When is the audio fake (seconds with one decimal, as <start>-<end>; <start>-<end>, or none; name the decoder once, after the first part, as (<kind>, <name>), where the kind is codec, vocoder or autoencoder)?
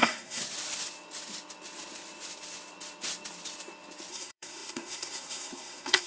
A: 0.0-0.4 (codec, SNAC); 4.1-6.1